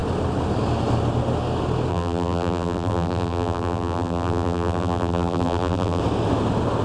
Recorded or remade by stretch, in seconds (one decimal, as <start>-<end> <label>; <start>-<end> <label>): 0.0-1.9 recorded; 1.9-6.0 remade; 6.0-6.8 recorded